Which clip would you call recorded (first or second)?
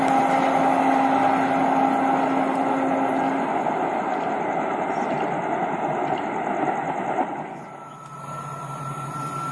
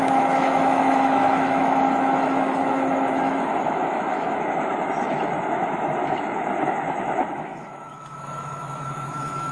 first